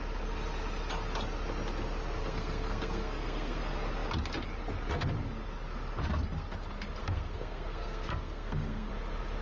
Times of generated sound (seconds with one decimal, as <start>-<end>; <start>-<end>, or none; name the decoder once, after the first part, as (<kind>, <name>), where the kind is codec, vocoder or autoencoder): 2.2-3.6 (codec, SNAC); 7.0-8.9